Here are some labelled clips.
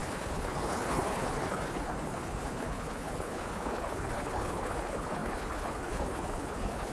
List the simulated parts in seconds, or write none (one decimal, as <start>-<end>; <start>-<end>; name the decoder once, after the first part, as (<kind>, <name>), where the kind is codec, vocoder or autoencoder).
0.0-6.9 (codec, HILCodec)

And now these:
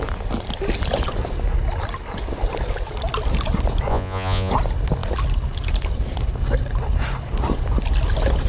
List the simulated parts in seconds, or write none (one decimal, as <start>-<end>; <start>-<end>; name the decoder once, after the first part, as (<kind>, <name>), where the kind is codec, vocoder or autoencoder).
3.9-4.5 (vocoder, Vocos)

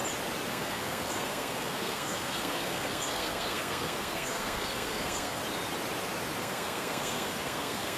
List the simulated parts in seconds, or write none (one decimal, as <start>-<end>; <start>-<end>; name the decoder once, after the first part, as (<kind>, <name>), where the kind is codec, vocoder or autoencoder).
0.5-5.4 (codec, SNAC); 6.4-8.0

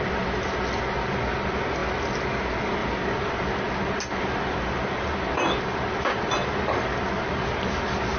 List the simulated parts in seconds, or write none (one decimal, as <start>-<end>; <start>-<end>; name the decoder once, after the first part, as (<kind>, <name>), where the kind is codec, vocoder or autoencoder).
none